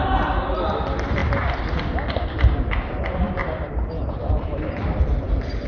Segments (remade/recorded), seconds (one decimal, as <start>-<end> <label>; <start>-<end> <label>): 0.0-3.4 recorded; 3.4-5.7 remade